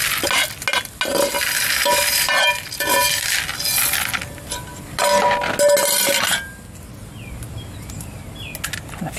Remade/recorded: recorded